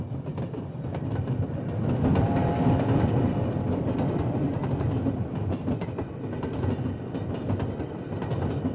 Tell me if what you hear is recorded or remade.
recorded